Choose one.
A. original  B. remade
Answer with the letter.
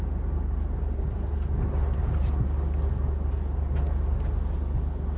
A